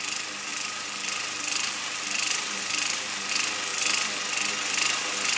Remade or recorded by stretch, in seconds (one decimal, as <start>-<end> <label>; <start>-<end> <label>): 0.0-0.5 recorded; 0.5-3.3 remade; 3.3-5.4 recorded